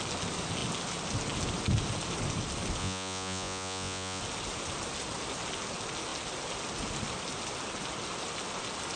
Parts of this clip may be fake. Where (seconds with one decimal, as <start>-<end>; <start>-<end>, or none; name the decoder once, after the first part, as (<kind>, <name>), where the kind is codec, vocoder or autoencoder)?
2.8-4.2 (vocoder, Vocos)